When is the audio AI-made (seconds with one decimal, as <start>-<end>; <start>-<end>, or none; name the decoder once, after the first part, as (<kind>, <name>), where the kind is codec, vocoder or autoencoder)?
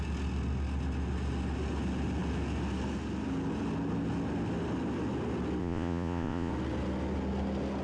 5.6-6.5 (vocoder, Vocos)